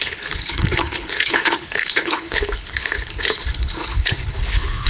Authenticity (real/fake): fake